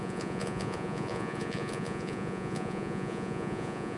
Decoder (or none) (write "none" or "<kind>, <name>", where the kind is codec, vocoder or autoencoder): vocoder, Vocos